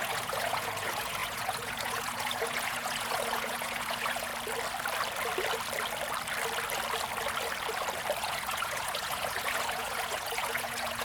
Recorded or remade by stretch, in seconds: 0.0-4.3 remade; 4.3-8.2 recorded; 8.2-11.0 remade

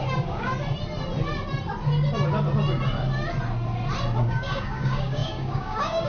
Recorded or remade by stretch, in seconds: 0.0-0.5 remade; 0.5-4.2 recorded; 4.2-6.1 remade